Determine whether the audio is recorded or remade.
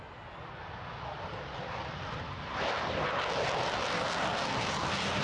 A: recorded